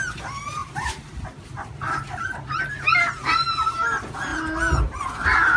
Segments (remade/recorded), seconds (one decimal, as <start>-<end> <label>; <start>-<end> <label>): 0.0-0.6 recorded; 0.6-2.6 remade; 2.6-5.6 recorded